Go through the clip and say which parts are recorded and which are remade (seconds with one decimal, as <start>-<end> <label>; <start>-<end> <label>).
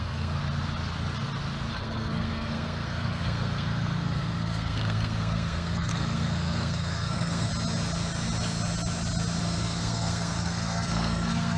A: 0.0-0.4 remade; 0.4-1.7 recorded; 1.7-7.5 remade; 7.5-9.4 recorded; 9.4-11.6 remade